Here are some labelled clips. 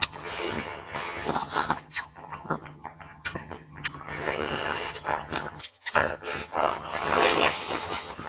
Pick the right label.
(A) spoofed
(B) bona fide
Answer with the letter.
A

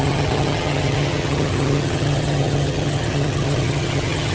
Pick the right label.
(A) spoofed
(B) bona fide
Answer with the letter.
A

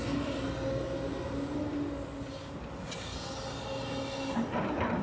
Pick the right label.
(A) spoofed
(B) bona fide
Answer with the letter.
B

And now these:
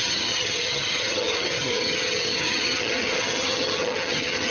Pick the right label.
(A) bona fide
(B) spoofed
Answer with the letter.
B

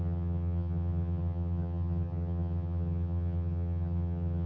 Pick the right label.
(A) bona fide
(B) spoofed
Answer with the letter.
B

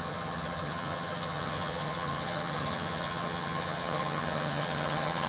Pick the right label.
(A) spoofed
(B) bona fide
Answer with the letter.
A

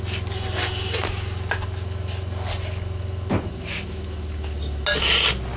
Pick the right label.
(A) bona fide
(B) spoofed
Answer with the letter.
A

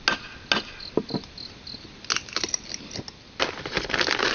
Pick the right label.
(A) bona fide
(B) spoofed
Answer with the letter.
A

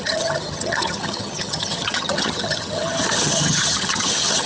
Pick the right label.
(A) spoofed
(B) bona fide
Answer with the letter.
A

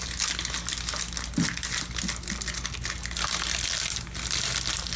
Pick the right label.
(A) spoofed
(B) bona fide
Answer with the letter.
B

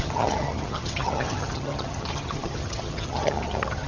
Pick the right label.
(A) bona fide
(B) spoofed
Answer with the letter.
B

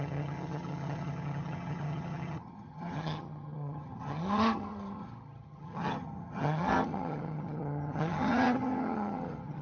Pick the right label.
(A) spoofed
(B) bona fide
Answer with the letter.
A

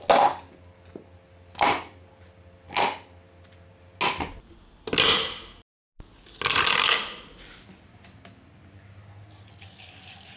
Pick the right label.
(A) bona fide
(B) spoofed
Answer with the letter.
A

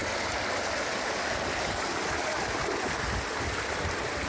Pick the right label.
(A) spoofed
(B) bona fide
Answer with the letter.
B